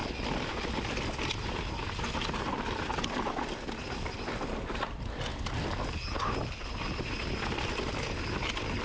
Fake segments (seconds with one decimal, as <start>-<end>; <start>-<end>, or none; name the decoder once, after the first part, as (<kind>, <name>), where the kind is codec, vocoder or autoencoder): none